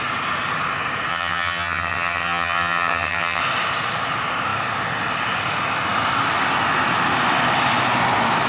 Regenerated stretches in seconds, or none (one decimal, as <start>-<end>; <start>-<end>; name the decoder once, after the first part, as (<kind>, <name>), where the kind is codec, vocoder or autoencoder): 1.1-3.4 (vocoder, HiFi-GAN)